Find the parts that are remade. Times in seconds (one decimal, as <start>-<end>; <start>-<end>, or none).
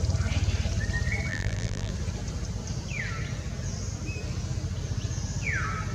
1.3-1.9